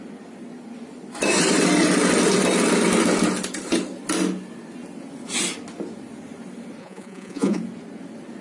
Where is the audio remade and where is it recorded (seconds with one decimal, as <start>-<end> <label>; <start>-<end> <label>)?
0.0-6.8 recorded; 6.8-7.6 remade; 7.6-8.4 recorded